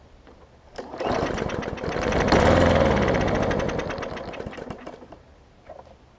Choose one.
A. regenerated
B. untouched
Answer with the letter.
B